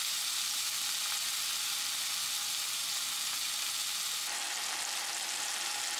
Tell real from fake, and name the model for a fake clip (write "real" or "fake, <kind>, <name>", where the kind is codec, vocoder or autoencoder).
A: real